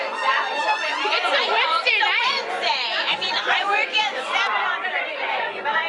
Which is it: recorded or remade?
remade